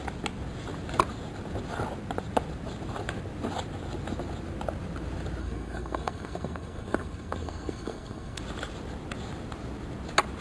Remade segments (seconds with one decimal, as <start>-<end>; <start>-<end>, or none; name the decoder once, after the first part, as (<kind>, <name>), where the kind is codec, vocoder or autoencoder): 5.4-8.4 (codec, SNAC)